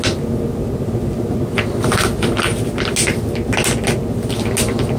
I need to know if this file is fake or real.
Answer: real